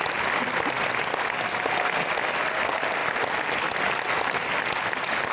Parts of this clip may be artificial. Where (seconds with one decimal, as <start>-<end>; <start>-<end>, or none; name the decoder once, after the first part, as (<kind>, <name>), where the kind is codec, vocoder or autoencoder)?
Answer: none